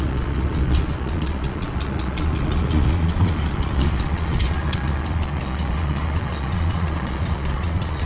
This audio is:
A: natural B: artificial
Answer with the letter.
B